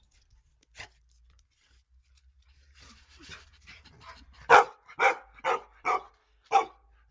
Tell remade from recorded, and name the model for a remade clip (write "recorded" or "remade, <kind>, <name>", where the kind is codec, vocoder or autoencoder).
remade, vocoder, BigVGAN v2